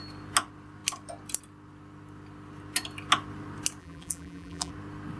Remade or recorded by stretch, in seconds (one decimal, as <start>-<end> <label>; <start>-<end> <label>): 0.0-3.8 recorded; 3.8-4.7 remade; 4.7-5.2 recorded